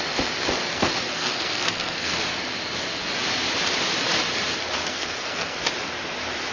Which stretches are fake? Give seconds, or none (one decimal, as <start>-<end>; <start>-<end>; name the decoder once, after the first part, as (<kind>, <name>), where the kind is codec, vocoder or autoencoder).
0.7-2.1 (codec, SNAC); 4.8-5.7